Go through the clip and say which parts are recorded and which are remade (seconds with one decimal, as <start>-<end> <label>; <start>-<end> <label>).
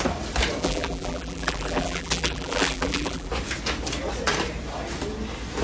0.0-0.6 recorded; 0.6-3.3 remade; 3.3-5.6 recorded